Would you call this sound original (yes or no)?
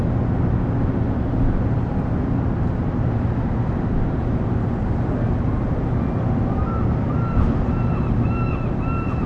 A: yes